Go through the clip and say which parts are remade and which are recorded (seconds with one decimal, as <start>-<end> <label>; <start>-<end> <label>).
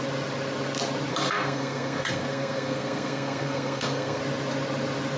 0.0-1.1 recorded; 1.1-4.2 remade; 4.2-5.2 recorded